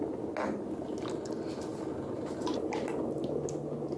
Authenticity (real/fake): real